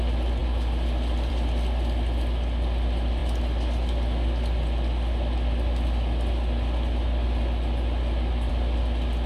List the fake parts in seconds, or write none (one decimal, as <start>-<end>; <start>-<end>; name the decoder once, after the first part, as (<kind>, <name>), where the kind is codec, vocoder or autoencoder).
none